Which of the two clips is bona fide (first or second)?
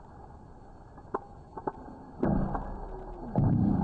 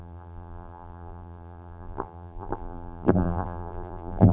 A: first